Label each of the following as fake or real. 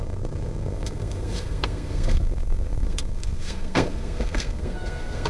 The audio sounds fake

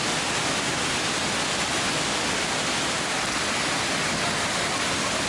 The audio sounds real